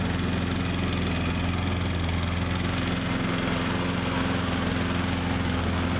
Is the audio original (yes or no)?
yes